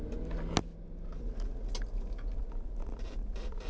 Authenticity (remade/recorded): recorded